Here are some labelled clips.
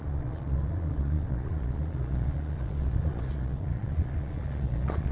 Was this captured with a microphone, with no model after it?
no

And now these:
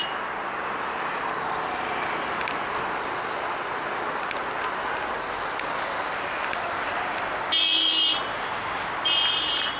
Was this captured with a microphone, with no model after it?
yes